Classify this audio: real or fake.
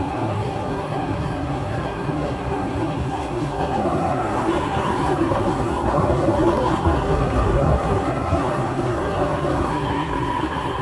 fake